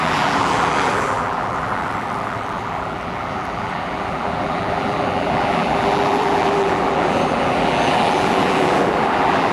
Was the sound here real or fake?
fake